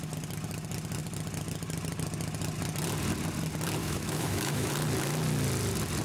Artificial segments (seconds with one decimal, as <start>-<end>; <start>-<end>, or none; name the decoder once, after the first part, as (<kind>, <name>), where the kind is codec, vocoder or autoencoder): 3.8-4.7 (autoencoder, DAC-VAE)